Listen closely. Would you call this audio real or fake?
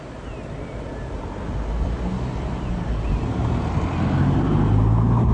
real